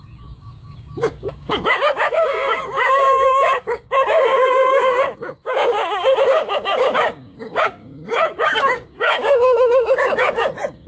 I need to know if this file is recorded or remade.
remade